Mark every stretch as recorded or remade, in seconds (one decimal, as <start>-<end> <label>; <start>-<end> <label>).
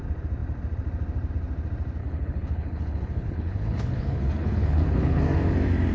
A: 0.0-2.0 recorded; 2.0-5.2 remade; 5.2-5.9 recorded